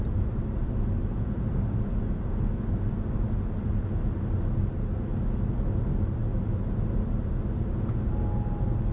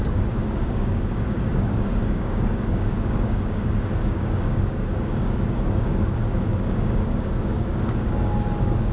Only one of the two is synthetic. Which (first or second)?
second